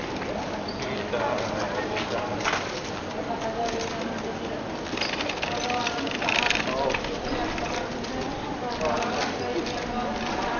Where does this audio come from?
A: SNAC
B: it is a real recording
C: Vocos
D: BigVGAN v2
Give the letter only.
B